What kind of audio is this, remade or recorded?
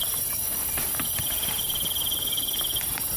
recorded